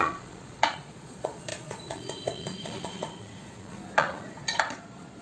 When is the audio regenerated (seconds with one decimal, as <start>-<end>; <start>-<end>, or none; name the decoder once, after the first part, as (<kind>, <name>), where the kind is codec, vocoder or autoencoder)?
0.0-5.2 (vocoder, Vocos)